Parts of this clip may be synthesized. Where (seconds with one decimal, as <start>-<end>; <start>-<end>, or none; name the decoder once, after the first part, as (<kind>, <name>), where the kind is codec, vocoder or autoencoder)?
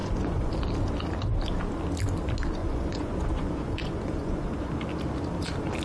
0.0-0.5 (vocoder, Vocos); 2.6-4.7